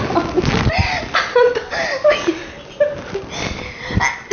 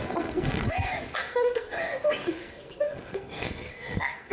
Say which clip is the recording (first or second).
first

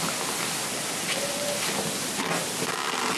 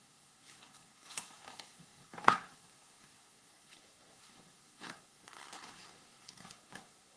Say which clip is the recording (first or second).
first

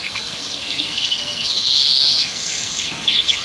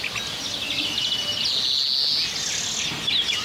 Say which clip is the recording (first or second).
second